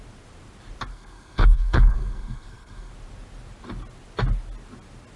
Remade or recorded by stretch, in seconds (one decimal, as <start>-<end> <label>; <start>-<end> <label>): 0.0-0.9 recorded; 0.9-2.9 remade; 2.9-5.2 recorded